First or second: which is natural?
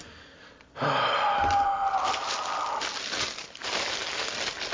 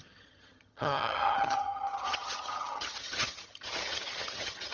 first